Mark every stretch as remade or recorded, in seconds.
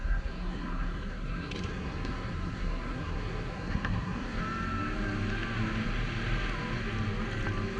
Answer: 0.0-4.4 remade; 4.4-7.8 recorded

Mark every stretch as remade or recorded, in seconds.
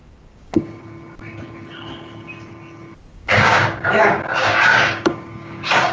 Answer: 0.0-0.8 remade; 0.8-3.1 recorded; 3.1-5.9 remade